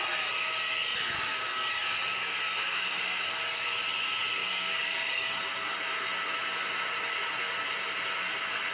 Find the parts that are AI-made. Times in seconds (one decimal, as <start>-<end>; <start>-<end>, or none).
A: 2.1-3.2; 4.4-5.3